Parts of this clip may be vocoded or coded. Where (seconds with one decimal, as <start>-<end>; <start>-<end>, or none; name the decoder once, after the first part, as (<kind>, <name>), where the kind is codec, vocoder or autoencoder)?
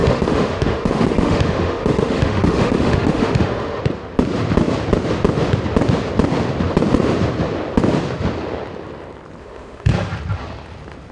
0.0-3.8 (autoencoder, DAC-VAE); 9.4-9.9